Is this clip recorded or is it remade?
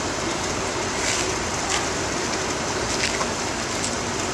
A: remade